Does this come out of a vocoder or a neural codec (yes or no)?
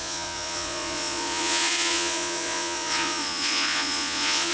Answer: yes